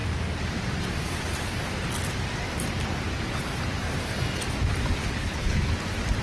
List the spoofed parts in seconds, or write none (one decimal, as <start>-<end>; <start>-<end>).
5.0-5.7